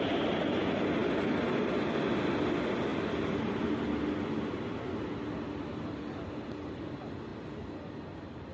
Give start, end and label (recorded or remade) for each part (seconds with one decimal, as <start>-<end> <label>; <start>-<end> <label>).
0.0-1.0 recorded; 1.0-2.2 remade; 2.2-2.9 recorded; 2.9-3.8 remade; 3.8-7.3 recorded; 7.3-7.9 remade; 7.9-8.5 recorded